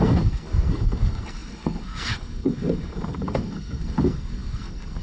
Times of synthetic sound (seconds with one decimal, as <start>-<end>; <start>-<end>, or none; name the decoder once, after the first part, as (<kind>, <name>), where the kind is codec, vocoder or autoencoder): 0.0-5.0 (codec, SNAC)